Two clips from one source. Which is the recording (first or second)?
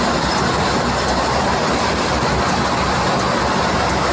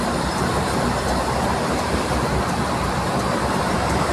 first